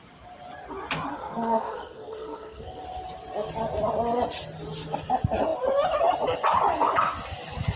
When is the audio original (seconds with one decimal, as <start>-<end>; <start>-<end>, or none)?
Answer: 0.0-1.1; 2.8-7.8